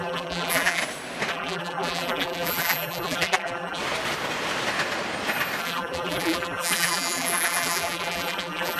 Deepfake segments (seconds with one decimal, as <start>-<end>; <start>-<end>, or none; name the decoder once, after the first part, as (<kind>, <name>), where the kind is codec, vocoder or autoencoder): 0.0-0.8 (vocoder, BigVGAN v2); 1.3-3.8; 5.6-8.8